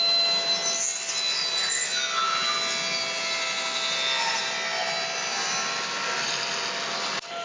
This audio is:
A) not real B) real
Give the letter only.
B